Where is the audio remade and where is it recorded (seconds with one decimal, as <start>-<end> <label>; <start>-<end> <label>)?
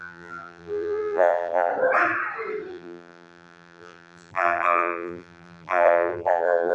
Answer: 0.0-1.7 remade; 1.7-2.7 recorded; 2.7-6.7 remade